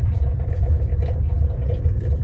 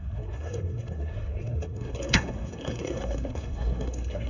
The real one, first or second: first